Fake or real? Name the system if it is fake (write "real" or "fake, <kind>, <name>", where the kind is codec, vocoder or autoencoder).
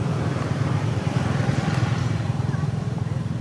fake, vocoder, BigVGAN v2